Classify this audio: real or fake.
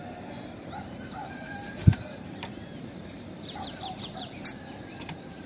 fake